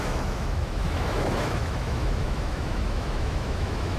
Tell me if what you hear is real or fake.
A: fake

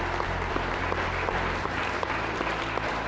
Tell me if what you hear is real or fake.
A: real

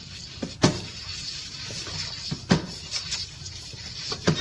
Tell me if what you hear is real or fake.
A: real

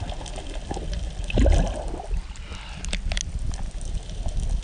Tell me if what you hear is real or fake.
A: real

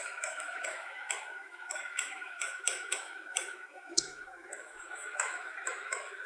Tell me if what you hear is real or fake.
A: fake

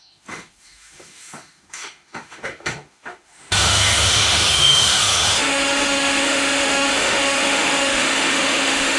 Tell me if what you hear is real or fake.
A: fake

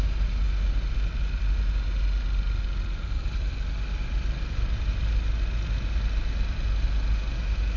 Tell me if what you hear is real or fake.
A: real